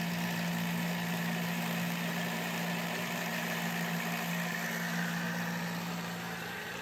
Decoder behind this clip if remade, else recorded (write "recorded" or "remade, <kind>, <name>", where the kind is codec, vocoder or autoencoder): remade, vocoder, BigVGAN v2